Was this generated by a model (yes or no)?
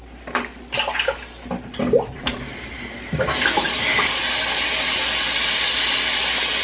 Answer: no